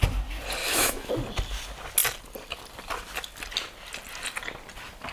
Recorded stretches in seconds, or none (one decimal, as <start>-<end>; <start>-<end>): 0.0-0.6; 1.1-5.1